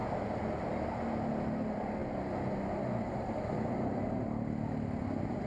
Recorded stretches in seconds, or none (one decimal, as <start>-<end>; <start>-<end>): 0.0-5.5